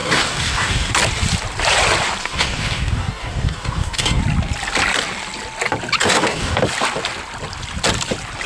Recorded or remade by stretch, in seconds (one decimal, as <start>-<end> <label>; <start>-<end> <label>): 0.0-0.9 remade; 0.9-2.2 recorded; 2.2-4.2 remade; 4.2-6.0 recorded; 6.0-6.6 remade; 6.6-8.5 recorded